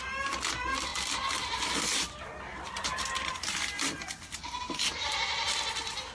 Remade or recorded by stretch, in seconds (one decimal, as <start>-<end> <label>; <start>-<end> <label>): 0.0-6.1 recorded